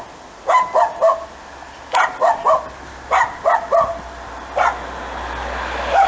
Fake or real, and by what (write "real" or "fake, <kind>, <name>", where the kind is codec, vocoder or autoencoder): real